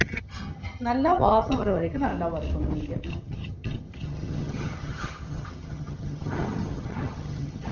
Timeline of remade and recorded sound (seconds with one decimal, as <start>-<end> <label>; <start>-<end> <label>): 0.0-2.1 remade; 2.1-3.1 recorded; 3.1-7.7 remade